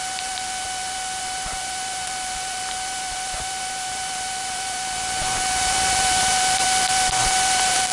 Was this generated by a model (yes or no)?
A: yes